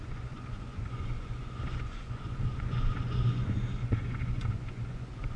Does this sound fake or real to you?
fake